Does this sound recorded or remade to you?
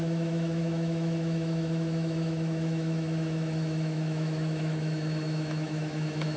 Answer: remade